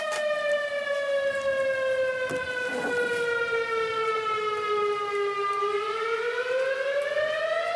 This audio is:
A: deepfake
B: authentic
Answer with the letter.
B